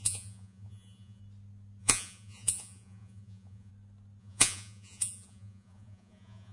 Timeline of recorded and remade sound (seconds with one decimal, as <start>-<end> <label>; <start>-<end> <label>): 0.0-1.2 remade; 1.2-1.8 recorded; 1.8-3.7 remade; 3.7-4.2 recorded; 4.2-6.5 remade